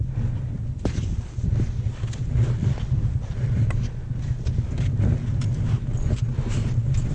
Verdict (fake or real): real